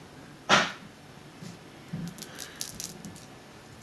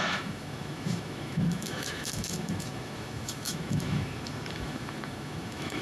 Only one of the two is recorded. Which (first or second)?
first